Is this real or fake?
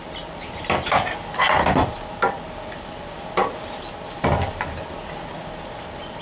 real